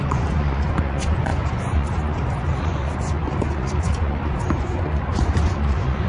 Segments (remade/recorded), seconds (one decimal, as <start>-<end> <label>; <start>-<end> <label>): 0.0-6.1 remade